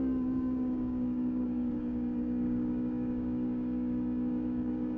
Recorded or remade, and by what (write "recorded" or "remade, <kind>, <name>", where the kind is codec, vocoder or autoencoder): remade, codec, DAC